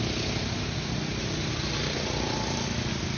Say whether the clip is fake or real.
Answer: real